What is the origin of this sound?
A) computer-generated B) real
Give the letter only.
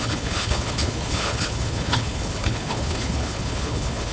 A